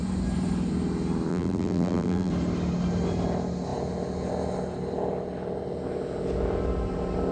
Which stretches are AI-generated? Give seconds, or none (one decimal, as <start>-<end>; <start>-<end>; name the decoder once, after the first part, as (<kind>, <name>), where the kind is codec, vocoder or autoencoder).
1.3-2.3 (vocoder, BigVGAN v2)